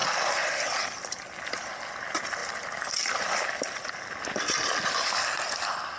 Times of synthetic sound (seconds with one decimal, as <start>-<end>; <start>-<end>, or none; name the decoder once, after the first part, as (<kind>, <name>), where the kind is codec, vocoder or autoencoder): none